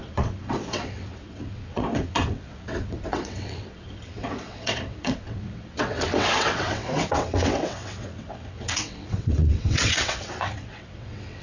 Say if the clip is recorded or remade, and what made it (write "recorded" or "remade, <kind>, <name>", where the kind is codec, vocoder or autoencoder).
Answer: remade, vocoder, WaveNeXt